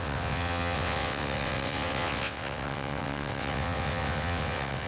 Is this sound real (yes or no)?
no